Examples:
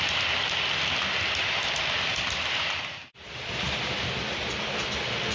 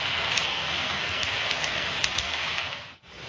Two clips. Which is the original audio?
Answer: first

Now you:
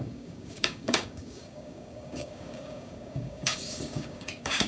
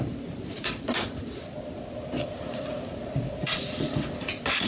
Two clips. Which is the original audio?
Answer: second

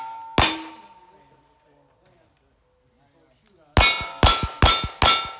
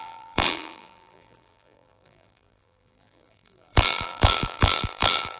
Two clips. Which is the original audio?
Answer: first